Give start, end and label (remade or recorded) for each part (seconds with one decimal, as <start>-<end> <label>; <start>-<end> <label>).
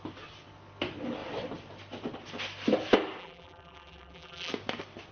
0.0-3.2 recorded; 3.2-4.5 remade; 4.5-5.1 recorded